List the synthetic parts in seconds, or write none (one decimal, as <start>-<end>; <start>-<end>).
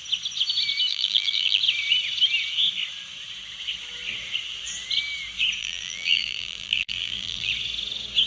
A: 0.9-1.6; 5.6-7.5